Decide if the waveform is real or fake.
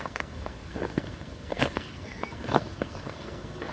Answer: fake